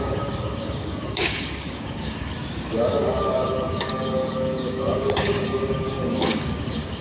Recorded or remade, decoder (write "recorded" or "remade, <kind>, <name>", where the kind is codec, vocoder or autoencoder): remade, codec, DAC